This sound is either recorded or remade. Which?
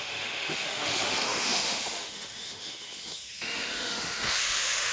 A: remade